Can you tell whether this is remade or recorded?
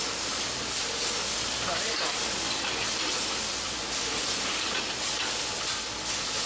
remade